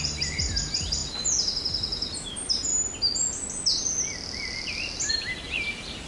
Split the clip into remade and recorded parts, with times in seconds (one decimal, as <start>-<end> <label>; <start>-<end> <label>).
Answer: 0.0-1.0 remade; 1.0-2.3 recorded; 2.3-2.7 remade; 2.7-5.1 recorded; 5.1-6.1 remade